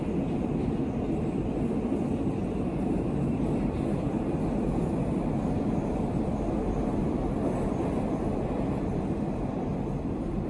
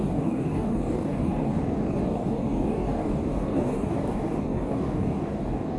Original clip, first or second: first